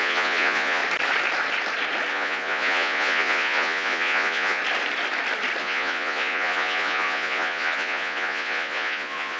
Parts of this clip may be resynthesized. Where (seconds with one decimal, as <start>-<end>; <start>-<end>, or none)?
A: 0.0-0.8; 2.1-4.6; 5.6-9.4